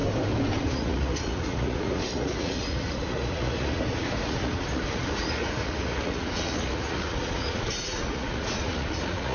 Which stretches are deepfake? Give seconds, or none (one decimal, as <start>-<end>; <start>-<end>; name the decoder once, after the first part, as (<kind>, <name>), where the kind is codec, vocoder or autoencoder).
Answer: 0.6-9.3 (vocoder, Vocos)